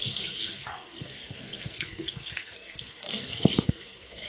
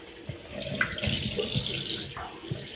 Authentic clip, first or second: second